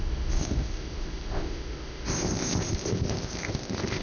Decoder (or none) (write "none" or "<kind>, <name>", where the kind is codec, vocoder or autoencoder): codec, ZipCodec